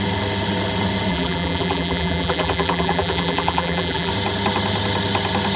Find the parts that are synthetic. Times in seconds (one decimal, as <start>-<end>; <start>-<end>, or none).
1.1-4.1